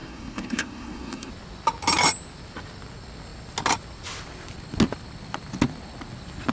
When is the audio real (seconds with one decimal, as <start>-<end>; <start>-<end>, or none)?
1.3-6.5